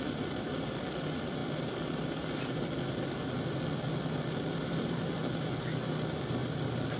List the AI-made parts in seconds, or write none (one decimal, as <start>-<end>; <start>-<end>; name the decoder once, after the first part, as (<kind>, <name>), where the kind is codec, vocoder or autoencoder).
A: 0.0-7.0 (vocoder, BigVGAN v2)